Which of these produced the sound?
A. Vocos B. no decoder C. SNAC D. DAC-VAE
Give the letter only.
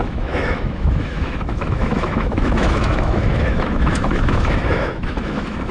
D